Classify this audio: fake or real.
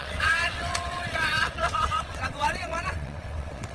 fake